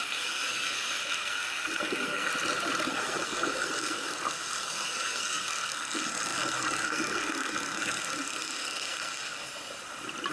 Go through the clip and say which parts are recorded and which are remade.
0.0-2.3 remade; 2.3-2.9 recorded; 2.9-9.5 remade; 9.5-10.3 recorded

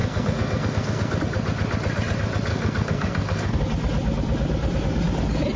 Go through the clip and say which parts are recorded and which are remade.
0.0-1.2 remade; 1.2-2.5 recorded; 2.5-3.6 remade; 3.6-5.6 recorded

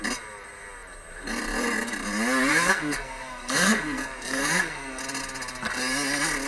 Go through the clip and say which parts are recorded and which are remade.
0.0-2.5 recorded; 2.5-5.0 remade; 5.0-6.5 recorded

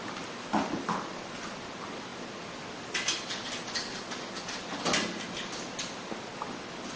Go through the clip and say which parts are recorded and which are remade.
0.0-7.0 recorded

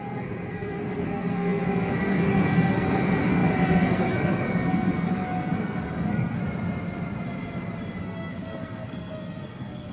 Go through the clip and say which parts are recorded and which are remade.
0.0-6.4 remade; 6.4-8.0 recorded; 8.0-9.9 remade

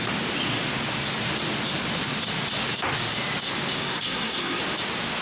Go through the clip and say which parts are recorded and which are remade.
0.0-3.8 recorded; 3.8-4.6 remade; 4.6-5.2 recorded

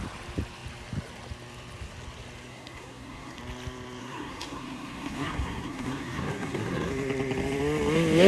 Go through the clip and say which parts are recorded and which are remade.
0.0-2.5 recorded; 2.5-3.4 remade; 3.4-4.0 recorded; 4.0-6.9 remade; 6.9-8.3 recorded